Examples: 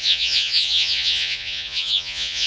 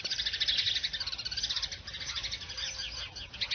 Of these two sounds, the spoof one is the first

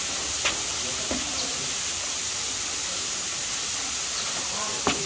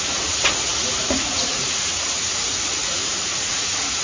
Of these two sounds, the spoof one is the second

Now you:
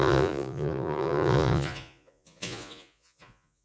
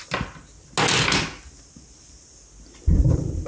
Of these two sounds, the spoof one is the first